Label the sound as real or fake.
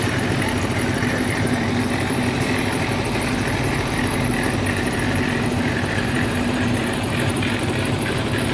fake